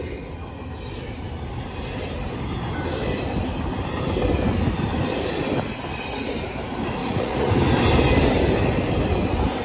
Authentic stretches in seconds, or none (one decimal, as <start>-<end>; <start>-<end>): 0.0-7.0; 7.5-9.6